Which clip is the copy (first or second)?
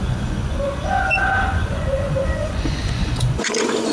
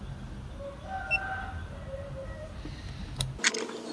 first